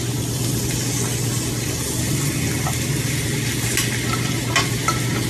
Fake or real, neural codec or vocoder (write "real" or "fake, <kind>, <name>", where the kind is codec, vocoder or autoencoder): real